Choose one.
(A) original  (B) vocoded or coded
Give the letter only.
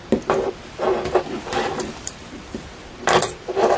B